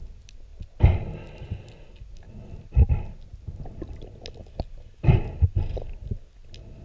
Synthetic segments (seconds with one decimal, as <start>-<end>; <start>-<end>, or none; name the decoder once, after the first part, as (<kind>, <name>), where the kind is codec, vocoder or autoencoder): none